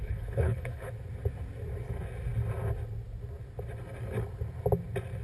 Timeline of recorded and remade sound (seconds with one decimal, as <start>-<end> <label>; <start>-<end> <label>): 0.0-0.9 remade; 0.9-5.2 recorded